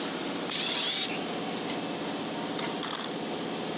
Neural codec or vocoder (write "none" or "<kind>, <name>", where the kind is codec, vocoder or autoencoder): none